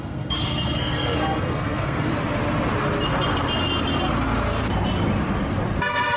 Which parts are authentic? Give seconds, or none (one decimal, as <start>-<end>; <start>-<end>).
2.1-5.8